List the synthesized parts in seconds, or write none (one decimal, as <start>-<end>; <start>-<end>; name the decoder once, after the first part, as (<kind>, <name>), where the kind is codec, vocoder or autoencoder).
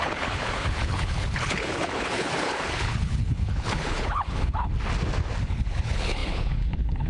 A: 0.0-4.7 (codec, HILCodec); 5.4-7.1